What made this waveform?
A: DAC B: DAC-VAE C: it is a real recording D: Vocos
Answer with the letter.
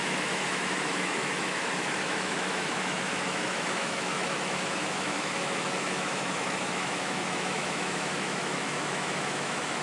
B